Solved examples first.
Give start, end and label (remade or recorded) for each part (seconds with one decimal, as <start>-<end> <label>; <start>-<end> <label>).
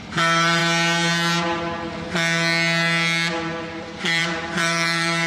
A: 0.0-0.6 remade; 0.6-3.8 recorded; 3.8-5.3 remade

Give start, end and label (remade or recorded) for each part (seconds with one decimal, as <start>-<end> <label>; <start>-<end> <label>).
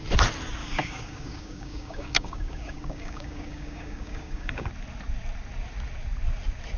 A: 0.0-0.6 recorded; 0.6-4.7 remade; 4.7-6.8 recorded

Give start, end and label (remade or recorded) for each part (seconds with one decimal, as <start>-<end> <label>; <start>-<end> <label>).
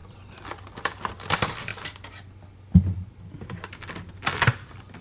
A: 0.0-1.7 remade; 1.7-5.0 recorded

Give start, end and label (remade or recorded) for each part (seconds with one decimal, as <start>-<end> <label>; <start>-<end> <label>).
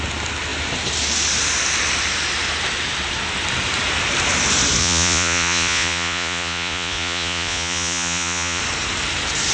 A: 0.0-4.8 recorded; 4.8-8.6 remade; 8.6-9.5 recorded